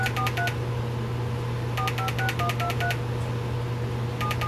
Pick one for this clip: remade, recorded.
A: recorded